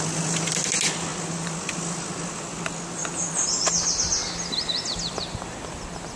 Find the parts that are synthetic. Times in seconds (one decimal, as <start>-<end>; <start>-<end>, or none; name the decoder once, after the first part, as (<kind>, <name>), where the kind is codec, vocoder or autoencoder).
none